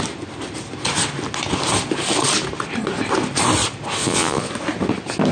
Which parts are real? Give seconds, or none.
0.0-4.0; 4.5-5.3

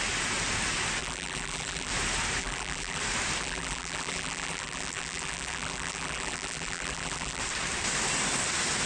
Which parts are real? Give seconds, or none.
0.0-1.0; 1.9-2.4; 3.0-3.4; 7.4-8.9

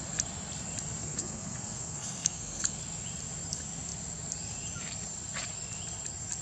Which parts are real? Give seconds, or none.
0.0-1.0; 2.8-6.4

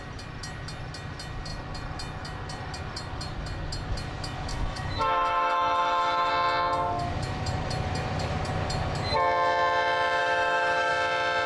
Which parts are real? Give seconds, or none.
0.0-4.5; 6.3-10.2; 10.9-11.5

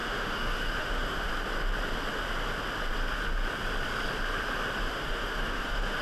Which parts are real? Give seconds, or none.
1.3-4.9

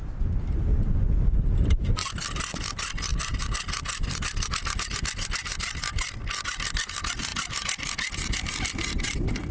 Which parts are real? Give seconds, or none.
0.0-9.5

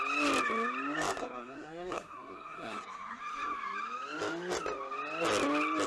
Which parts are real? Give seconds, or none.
0.0-1.2; 3.2-5.9